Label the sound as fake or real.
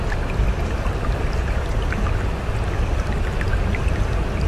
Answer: real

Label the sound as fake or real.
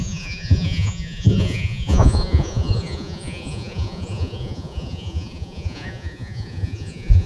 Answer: fake